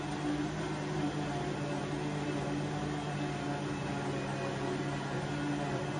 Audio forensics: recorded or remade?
recorded